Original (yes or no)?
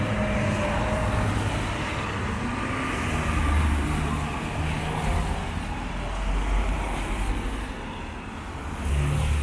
yes